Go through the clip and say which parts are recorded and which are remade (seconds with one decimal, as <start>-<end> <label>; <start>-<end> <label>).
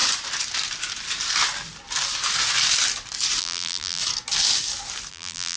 0.0-3.4 recorded; 3.4-4.0 remade; 4.0-5.1 recorded; 5.1-5.6 remade